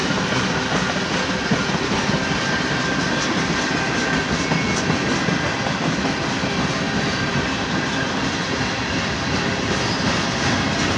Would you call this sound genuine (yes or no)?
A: yes